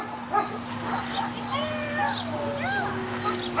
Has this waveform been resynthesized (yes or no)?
no